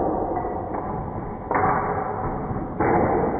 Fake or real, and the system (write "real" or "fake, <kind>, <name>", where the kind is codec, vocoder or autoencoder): real